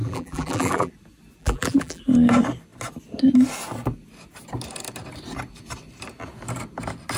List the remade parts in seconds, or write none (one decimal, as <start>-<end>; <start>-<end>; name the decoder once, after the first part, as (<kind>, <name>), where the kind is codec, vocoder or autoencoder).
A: 0.0-0.9 (vocoder, BigVGAN v2); 1.4-2.0

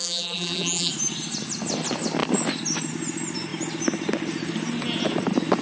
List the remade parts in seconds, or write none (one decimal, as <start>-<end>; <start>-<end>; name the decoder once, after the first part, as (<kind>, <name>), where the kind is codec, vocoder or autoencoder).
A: 0.0-0.9 (vocoder, BigVGAN v2)

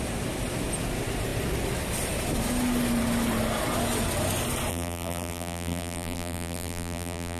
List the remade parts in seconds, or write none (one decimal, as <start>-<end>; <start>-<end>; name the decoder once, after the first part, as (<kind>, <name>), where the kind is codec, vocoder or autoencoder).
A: 4.7-7.4 (vocoder, BigVGAN v2)

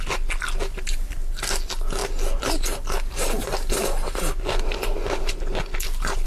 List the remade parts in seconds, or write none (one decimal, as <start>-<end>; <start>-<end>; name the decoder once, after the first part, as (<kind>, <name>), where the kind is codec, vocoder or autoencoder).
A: none

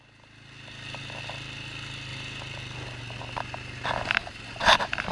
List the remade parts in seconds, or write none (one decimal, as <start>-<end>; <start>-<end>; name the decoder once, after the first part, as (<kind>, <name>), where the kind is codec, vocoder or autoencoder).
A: none